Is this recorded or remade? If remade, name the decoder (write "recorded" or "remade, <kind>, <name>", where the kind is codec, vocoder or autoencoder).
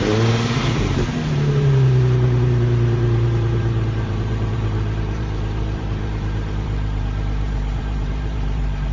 remade, vocoder, BigVGAN v2